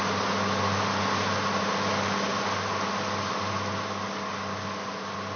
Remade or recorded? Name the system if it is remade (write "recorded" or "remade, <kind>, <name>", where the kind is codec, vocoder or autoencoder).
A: recorded